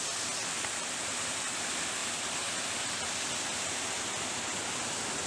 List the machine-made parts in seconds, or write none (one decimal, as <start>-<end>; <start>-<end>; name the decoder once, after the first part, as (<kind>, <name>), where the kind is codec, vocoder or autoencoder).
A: none